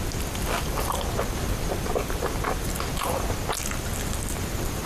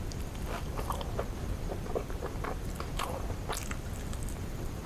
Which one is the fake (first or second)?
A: second